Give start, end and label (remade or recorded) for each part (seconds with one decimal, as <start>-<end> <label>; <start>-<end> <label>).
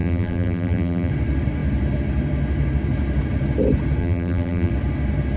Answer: 0.0-1.1 remade; 1.1-4.0 recorded; 4.0-4.7 remade; 4.7-5.4 recorded